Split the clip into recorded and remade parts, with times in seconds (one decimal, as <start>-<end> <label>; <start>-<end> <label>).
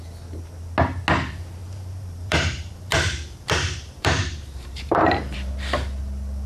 0.0-1.6 recorded; 1.6-5.5 remade; 5.5-6.5 recorded